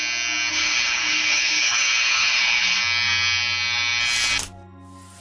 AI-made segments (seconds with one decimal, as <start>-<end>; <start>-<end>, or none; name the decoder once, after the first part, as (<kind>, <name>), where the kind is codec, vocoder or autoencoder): 0.5-2.8 (codec, HILCodec)